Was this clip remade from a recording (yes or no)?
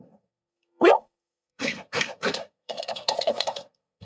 yes